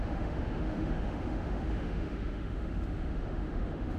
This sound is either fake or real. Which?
fake